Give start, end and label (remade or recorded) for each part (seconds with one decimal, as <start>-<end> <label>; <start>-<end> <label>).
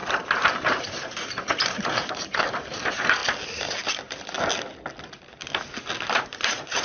0.0-3.2 remade; 3.2-6.1 recorded; 6.1-6.8 remade